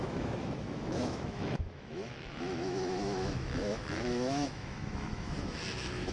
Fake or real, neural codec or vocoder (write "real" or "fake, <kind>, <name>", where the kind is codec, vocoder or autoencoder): fake, autoencoder, DAC-VAE